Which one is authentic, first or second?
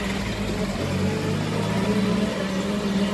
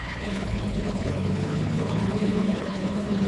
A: first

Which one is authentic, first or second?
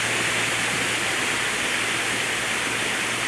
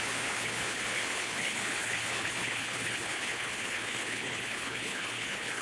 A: first